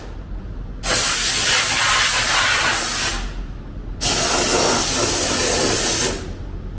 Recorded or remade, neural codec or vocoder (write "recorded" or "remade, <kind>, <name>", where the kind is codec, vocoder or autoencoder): recorded